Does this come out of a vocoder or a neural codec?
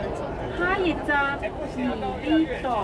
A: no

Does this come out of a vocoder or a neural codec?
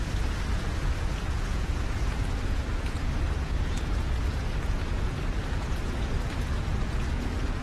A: yes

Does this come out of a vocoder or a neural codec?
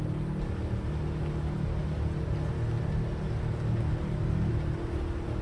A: no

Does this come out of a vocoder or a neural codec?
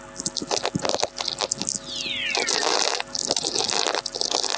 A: no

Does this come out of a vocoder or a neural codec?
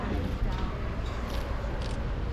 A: no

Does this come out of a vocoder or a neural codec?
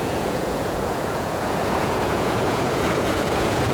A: yes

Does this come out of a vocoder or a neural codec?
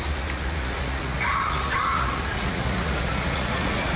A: yes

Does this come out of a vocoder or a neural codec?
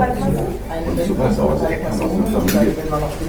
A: no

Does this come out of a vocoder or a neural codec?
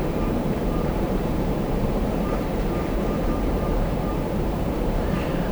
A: yes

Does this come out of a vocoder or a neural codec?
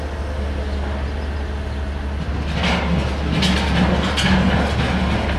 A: no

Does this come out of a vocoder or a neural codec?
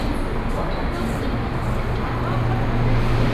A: no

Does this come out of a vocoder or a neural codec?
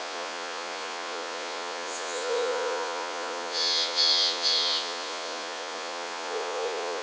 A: yes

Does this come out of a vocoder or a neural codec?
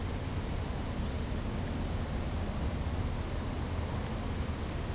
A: no